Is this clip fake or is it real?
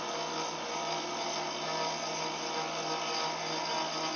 real